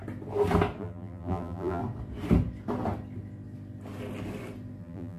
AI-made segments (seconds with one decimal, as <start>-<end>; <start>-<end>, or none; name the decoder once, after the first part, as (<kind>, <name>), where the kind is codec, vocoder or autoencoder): 0.8-1.8 (vocoder, BigVGAN v2); 4.8-5.2